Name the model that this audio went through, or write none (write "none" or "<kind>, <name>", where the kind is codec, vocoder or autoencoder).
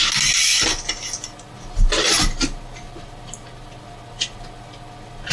none